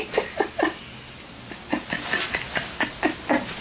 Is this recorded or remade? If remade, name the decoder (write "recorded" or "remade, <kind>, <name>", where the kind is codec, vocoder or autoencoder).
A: recorded